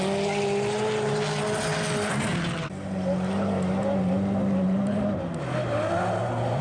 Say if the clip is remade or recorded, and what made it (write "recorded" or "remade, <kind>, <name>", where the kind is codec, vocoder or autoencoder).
recorded